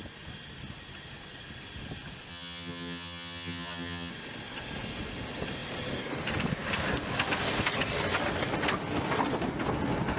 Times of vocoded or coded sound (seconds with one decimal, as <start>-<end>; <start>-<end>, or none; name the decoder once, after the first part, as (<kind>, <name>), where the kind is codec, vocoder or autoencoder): 2.3-4.1 (vocoder, HiFi-GAN)